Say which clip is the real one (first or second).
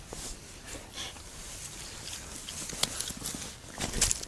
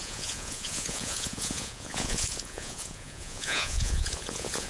first